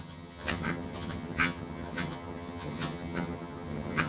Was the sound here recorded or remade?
remade